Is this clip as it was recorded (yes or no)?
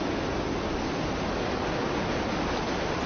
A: yes